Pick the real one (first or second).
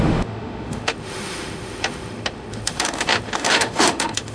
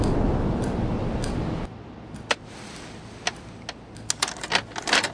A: second